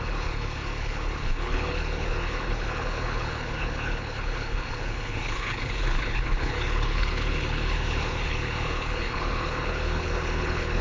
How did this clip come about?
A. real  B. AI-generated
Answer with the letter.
B